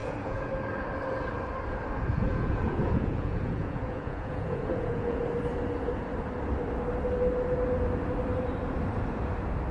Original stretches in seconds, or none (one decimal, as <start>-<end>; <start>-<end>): 0.5-2.1; 5.2-9.7